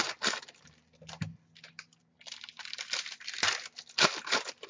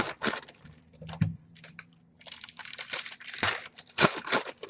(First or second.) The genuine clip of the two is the first